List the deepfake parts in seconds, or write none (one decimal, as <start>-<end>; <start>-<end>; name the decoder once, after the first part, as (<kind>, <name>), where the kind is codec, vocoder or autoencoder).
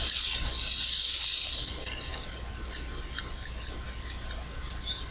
none